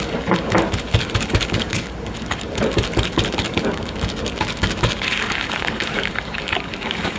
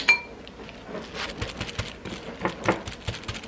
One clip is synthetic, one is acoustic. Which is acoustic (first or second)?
second